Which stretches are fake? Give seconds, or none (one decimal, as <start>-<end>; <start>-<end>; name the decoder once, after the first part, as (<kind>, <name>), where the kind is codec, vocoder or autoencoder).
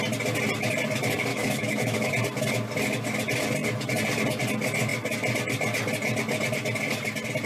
1.3-2.1 (autoencoder, DAC-VAE)